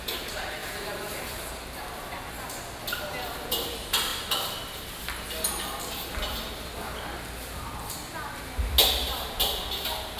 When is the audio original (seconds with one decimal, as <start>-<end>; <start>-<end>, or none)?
0.0-0.6; 1.4-4.1; 5.0-10.2